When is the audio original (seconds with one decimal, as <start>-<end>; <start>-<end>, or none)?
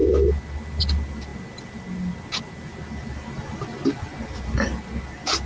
0.0-5.5